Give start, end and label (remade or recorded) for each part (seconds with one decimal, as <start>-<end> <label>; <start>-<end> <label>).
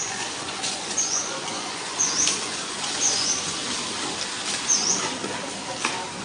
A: 0.0-3.6 remade; 3.6-4.5 recorded; 4.5-5.2 remade; 5.2-6.2 recorded